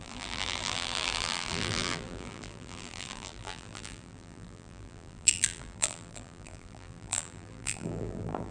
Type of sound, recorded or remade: remade